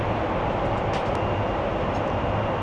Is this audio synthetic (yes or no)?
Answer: no